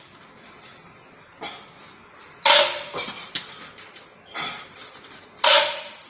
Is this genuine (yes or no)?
yes